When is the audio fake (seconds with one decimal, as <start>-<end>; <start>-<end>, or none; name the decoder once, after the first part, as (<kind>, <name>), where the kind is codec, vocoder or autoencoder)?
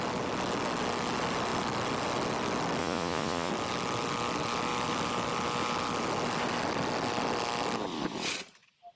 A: 2.8-3.5 (vocoder, Vocos)